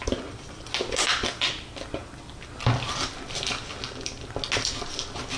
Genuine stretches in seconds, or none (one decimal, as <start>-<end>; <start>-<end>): 0.0-5.4